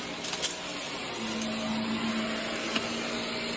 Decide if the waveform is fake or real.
real